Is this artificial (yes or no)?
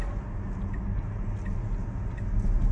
no